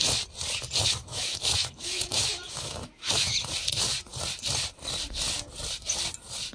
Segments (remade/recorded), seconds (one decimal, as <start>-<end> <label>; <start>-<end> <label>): 0.0-1.0 recorded; 1.0-3.5 remade; 3.5-6.5 recorded

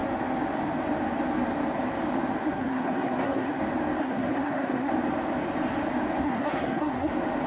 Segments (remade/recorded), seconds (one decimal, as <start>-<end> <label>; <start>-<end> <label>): 0.0-2.4 recorded; 2.4-3.6 remade; 3.6-4.0 recorded; 4.0-4.9 remade; 4.9-6.2 recorded; 6.2-7.1 remade; 7.1-7.5 recorded

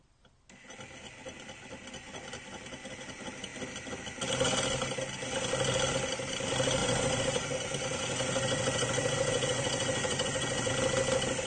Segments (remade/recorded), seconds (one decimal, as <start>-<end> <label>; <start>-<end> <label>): 0.0-6.8 recorded; 6.8-10.7 remade; 10.7-11.5 recorded

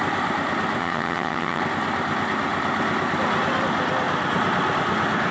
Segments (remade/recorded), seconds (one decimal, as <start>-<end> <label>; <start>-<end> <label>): 0.0-0.8 recorded; 0.8-1.6 remade; 1.6-5.3 recorded

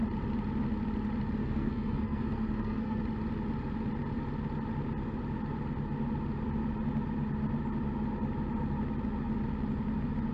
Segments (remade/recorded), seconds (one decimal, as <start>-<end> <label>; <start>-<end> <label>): 0.0-1.4 recorded; 1.4-3.0 remade; 3.0-10.3 recorded

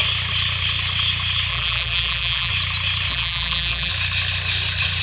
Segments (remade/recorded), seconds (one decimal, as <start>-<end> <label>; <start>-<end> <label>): 0.0-1.5 recorded; 1.5-2.5 remade; 2.5-3.1 recorded; 3.1-3.9 remade; 3.9-5.0 recorded

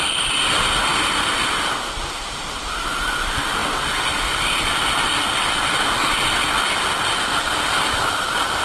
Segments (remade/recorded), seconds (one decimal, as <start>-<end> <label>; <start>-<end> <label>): 0.0-8.6 recorded

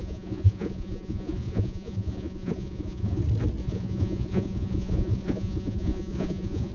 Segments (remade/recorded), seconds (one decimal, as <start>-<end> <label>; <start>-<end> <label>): 0.0-3.2 remade; 3.2-3.6 recorded; 3.6-6.7 remade